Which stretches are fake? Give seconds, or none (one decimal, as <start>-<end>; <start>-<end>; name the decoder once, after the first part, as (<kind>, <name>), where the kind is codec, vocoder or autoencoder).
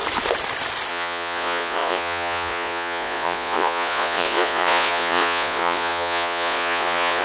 0.9-7.2 (vocoder, Vocos)